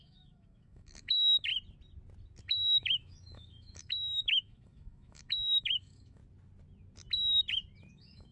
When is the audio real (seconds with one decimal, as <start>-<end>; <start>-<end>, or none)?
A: 1.5-2.4; 6.2-7.9